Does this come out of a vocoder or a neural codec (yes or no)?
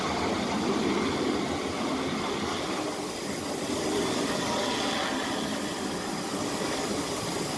no